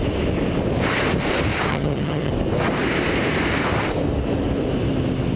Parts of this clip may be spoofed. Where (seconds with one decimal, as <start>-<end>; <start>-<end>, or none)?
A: 1.7-2.3